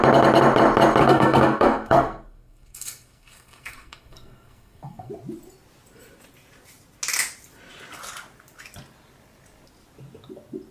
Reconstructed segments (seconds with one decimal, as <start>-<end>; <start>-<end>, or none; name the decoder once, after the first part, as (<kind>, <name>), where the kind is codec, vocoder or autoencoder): 1.0-5.1 (codec, SNAC)